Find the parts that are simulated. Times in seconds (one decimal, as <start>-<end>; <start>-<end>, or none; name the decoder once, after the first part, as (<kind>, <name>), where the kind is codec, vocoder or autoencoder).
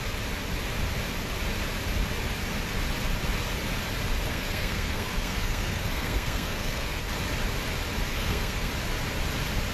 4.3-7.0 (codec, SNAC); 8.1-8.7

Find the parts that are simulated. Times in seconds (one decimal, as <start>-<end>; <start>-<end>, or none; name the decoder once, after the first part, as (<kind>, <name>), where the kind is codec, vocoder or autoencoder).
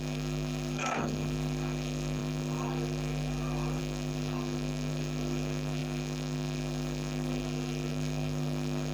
0.0-8.9 (codec, SNAC)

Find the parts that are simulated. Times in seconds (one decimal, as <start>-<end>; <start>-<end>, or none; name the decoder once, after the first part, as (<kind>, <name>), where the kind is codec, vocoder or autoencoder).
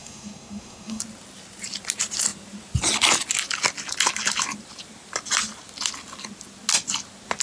0.0-1.0 (codec, SNAC)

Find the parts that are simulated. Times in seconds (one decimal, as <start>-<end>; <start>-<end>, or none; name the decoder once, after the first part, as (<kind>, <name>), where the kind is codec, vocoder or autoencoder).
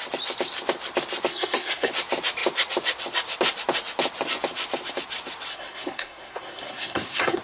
1.3-1.9 (codec, SNAC); 5.5-7.4